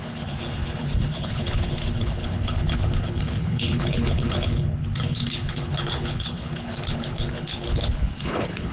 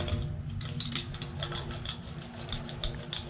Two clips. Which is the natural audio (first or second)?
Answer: second